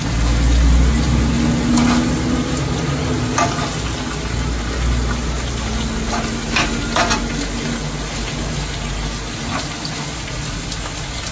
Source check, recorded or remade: recorded